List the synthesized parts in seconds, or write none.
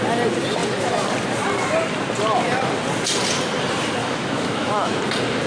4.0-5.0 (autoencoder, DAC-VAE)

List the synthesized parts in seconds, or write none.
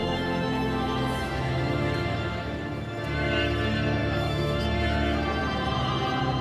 0.0-2.7 (autoencoder, DAC-VAE); 4.0-4.6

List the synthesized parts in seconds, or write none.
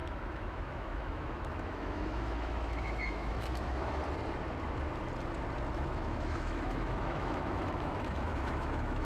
0.0-4.0 (autoencoder, DAC-VAE); 5.7-9.0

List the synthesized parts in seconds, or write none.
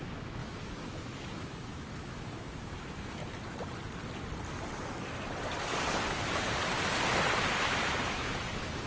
0.0-3.2 (autoencoder, DAC-VAE); 7.6-8.9